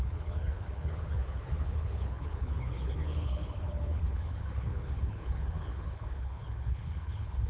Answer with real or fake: fake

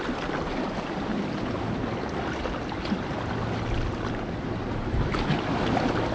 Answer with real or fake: real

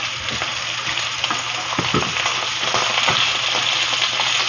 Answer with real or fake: real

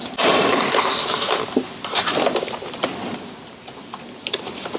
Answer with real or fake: real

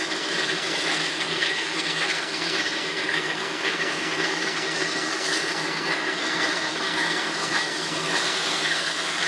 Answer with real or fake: fake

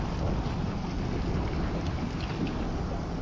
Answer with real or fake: real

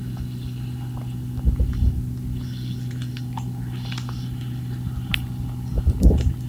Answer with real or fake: real